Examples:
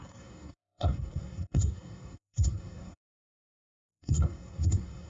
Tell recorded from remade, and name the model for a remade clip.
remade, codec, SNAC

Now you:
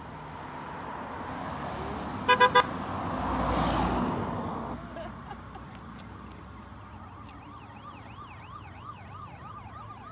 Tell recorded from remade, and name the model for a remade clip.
recorded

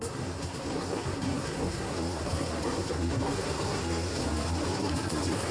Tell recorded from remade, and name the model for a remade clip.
remade, codec, SNAC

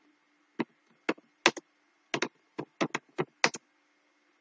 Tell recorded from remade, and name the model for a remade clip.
recorded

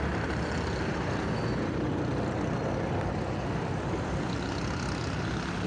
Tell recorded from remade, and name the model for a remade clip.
recorded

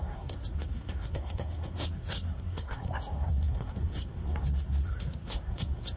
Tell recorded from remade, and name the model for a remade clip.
remade, codec, SNAC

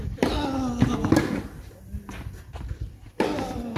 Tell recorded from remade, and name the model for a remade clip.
recorded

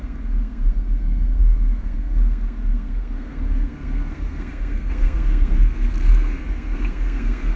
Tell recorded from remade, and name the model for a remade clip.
remade, codec, SNAC